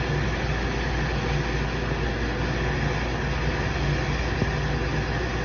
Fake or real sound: real